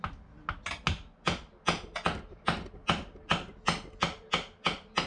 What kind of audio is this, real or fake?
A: real